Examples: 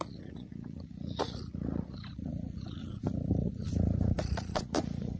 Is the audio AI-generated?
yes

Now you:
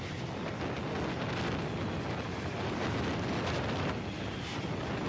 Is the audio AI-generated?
no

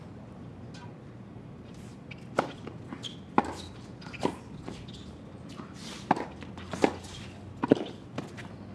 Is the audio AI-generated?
no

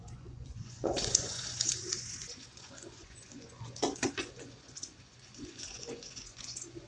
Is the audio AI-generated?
yes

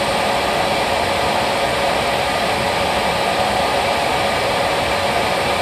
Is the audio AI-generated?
no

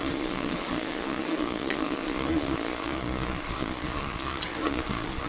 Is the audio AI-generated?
yes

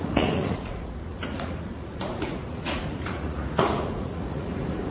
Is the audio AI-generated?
yes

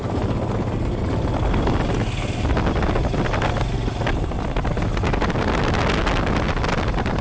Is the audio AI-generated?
no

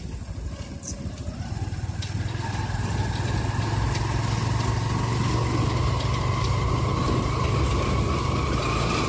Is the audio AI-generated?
no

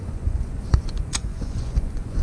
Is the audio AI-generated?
yes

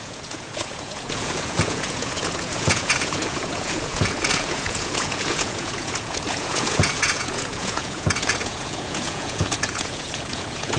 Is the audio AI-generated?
yes